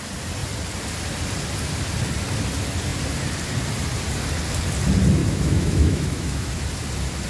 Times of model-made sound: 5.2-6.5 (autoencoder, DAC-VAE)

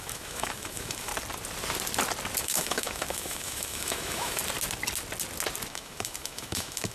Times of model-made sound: 0.0-1.1 (autoencoder, DAC-VAE); 2.4-4.4; 5.7-6.9

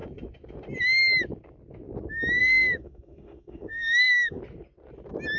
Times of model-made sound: 2.4-4.4 (autoencoder, DAC-VAE)

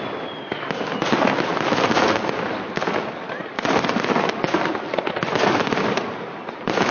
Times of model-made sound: none